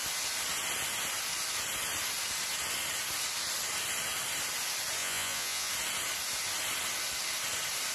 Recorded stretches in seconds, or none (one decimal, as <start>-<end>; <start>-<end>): 0.0-5.0; 5.7-7.9